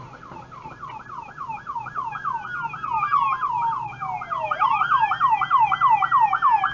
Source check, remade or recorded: recorded